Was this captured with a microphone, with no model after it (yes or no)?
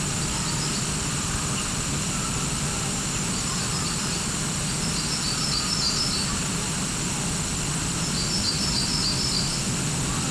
yes